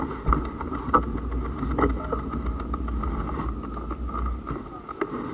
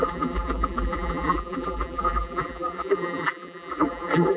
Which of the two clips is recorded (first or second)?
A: first